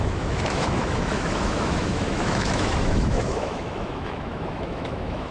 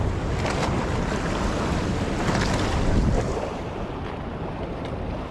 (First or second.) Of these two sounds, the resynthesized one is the first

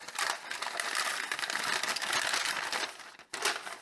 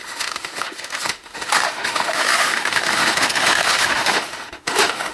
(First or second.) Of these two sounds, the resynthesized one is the second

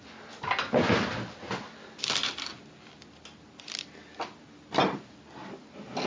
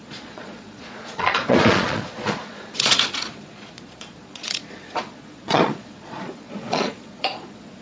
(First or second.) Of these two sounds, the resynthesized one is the second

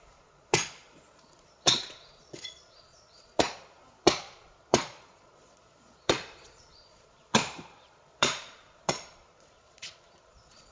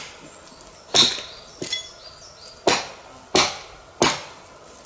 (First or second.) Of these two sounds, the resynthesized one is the first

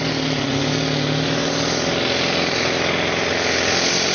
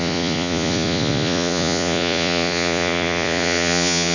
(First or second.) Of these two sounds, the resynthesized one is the second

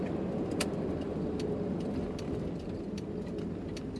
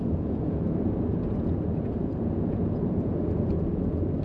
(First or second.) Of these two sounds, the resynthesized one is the second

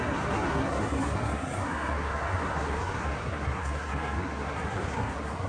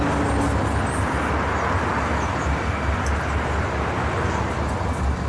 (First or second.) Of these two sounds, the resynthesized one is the first